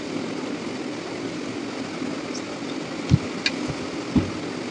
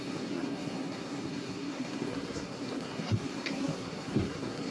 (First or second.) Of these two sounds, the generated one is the second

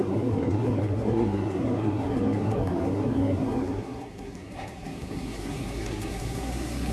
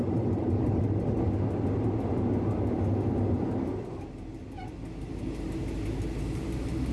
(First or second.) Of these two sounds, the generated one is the first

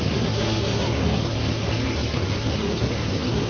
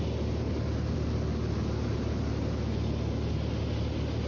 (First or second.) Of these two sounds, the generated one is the first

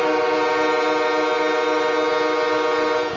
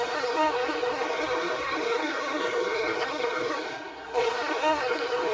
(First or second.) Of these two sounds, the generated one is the second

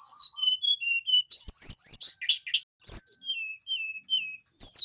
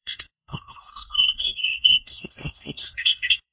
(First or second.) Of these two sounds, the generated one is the second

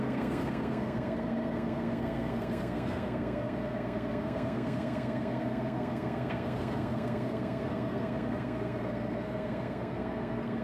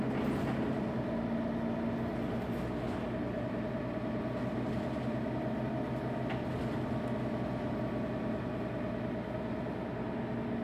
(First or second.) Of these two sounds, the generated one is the first